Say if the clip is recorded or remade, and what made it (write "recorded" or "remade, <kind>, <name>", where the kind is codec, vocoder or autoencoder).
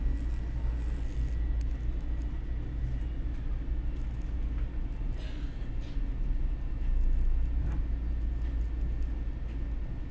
recorded